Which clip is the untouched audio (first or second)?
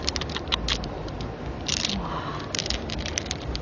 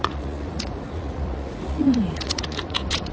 first